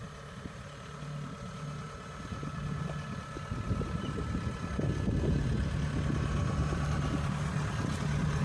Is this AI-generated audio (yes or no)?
no